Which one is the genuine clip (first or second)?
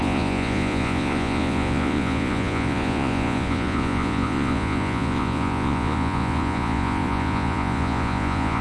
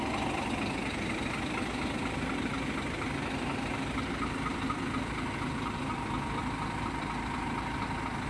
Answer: second